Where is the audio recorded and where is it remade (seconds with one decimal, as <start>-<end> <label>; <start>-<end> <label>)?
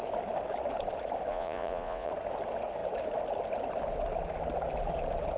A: 0.0-1.3 recorded; 1.3-2.1 remade; 2.1-5.4 recorded